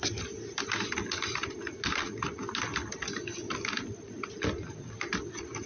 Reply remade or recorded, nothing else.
recorded